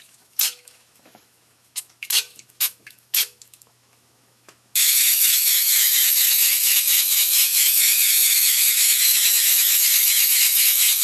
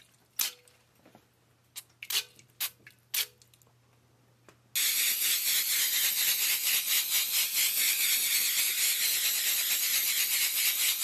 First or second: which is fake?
first